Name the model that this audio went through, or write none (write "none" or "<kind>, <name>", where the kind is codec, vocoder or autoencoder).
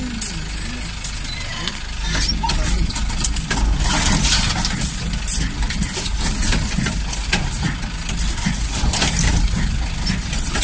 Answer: none